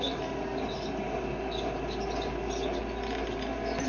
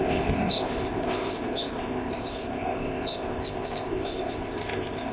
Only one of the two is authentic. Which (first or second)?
first